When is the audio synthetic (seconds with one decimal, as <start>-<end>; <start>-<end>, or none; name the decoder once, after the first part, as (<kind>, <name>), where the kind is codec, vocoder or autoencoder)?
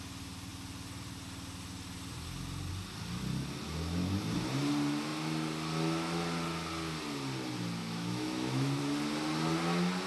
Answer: 7.8-8.8 (autoencoder, DAC-VAE)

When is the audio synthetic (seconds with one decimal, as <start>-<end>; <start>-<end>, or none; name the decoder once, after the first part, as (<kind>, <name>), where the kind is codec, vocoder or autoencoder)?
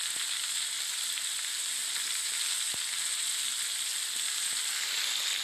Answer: none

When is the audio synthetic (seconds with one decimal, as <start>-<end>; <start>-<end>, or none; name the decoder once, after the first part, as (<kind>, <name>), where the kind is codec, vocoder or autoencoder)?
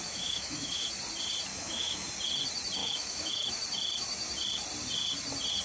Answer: 0.0-0.8 (autoencoder, DAC-VAE); 1.5-2.1; 2.8-3.5